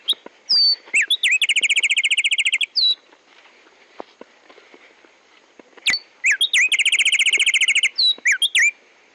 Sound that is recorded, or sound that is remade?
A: recorded